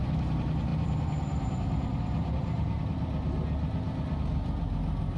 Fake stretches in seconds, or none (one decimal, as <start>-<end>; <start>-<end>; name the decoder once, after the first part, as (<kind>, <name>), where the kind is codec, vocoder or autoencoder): 0.7-2.8 (vocoder, BigVGAN v2)